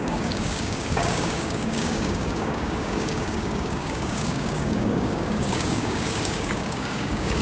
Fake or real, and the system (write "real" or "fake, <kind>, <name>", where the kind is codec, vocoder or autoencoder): fake, codec, DAC